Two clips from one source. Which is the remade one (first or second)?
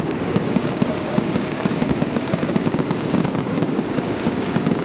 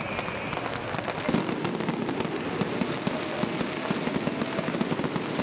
first